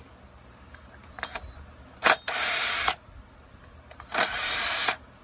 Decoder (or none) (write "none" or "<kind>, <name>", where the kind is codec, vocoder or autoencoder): vocoder, BigVGAN v2